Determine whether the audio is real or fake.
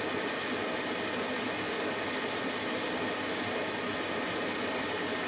real